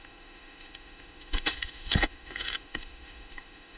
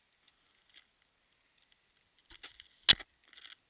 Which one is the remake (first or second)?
first